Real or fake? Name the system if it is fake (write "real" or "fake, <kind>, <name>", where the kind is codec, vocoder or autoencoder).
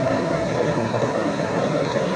fake, codec, SNAC